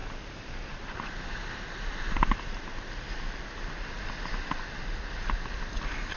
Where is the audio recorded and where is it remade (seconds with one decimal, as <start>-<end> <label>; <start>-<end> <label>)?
0.0-0.9 remade; 0.9-6.2 recorded